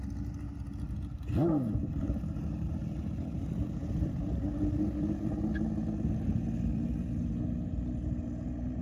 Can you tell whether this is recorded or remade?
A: recorded